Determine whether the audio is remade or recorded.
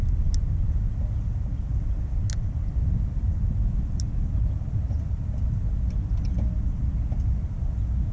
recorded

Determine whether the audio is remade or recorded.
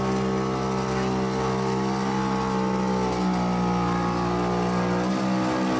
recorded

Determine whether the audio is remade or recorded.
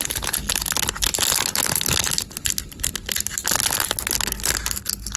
recorded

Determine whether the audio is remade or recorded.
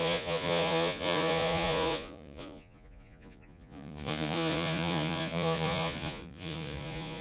remade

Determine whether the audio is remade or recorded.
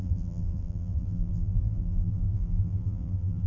remade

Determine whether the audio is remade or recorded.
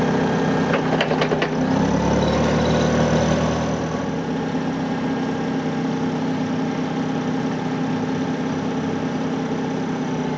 recorded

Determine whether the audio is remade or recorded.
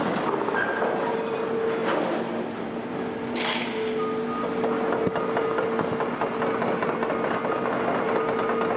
recorded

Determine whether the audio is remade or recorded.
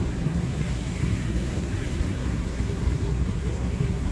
remade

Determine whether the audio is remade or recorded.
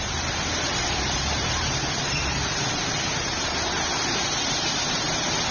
remade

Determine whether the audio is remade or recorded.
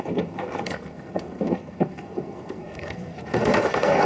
remade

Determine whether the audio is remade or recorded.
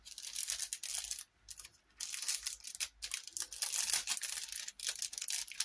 recorded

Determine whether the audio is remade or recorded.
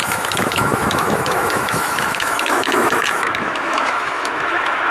remade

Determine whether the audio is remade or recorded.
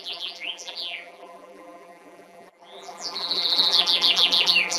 remade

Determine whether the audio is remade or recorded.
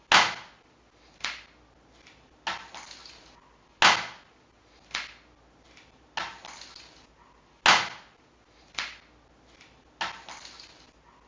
recorded